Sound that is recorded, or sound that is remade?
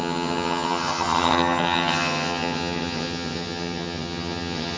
remade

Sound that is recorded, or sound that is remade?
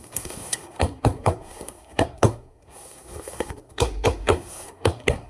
remade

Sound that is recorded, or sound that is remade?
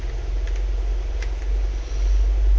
recorded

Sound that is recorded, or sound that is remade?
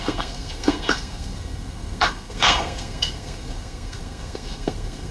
remade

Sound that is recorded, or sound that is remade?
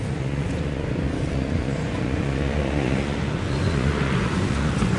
remade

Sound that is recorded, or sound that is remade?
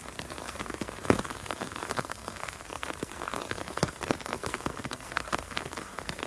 remade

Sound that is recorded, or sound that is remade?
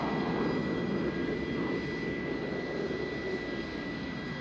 recorded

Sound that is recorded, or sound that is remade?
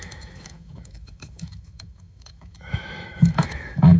remade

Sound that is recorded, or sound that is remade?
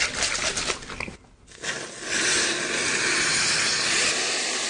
recorded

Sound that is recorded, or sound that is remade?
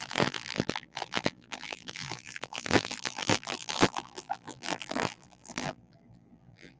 remade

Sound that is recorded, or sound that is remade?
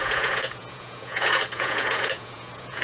remade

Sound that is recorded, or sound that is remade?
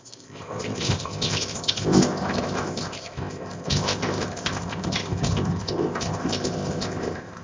remade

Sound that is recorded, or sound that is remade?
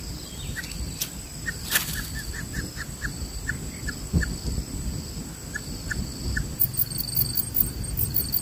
recorded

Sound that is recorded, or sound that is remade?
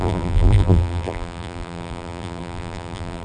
remade